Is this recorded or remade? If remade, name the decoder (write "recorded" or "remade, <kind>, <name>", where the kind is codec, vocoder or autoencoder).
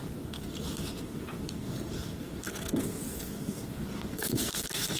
remade, codec, SNAC